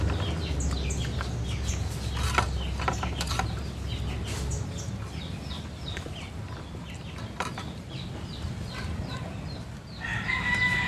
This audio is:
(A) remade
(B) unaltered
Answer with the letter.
B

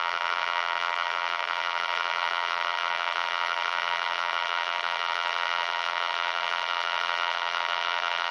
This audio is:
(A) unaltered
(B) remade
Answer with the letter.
B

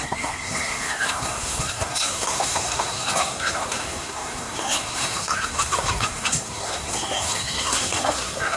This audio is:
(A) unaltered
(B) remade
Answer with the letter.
B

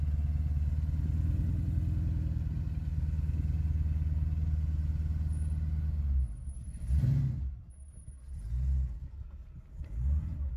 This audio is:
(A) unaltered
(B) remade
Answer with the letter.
A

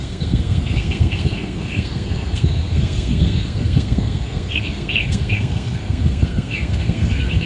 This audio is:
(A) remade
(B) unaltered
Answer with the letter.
A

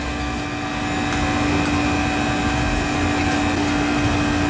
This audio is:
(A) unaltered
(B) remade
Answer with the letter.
A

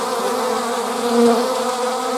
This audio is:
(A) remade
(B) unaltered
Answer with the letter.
B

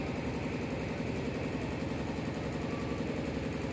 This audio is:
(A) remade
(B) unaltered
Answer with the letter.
B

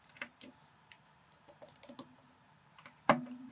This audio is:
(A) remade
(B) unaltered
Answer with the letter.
A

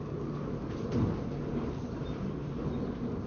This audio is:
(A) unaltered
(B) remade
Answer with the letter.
A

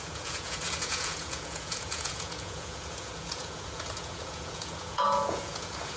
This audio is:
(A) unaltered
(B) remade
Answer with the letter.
B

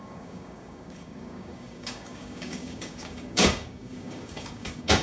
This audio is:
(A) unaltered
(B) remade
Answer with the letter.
B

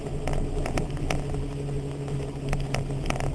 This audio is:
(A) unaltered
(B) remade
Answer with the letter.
A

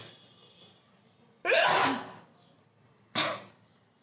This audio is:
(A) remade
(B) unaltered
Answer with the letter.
B